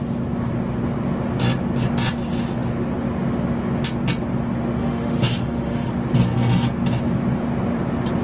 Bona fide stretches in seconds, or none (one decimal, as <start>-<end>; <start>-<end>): 0.0-4.8; 5.9-8.2